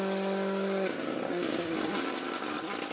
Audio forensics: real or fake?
real